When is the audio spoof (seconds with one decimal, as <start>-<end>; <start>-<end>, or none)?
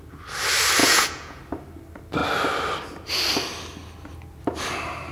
0.8-1.4